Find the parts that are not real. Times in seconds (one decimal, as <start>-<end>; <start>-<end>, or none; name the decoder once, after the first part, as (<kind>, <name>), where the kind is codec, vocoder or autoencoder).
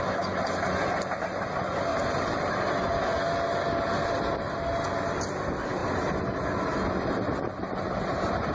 1.9-2.5 (vocoder, BigVGAN v2)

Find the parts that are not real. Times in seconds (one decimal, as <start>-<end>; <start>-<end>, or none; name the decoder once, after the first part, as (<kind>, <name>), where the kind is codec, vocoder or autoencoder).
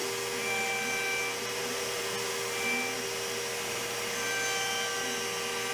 1.4-2.0 (vocoder, BigVGAN v2)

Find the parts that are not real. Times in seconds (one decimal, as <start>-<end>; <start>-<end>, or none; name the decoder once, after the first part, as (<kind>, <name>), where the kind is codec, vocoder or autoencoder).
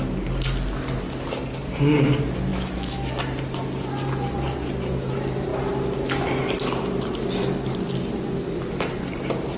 2.5-3.1 (autoencoder, DAC-VAE)